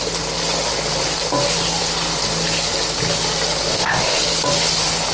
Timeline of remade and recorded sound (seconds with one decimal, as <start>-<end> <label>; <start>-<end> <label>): 0.0-3.7 recorded; 3.7-4.2 remade; 4.2-5.1 recorded